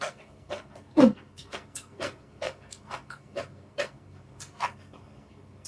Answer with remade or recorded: remade